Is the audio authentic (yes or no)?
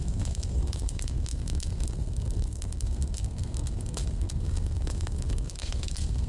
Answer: no